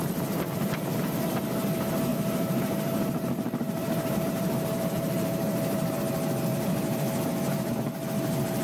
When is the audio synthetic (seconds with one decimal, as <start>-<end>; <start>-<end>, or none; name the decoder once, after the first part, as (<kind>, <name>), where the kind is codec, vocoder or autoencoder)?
2.1-6.0 (vocoder, BigVGAN v2); 6.5-7.7